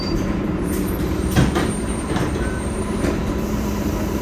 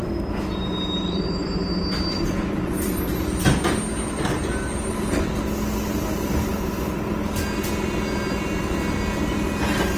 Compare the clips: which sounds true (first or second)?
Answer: second